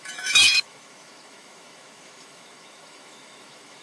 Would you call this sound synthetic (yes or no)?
yes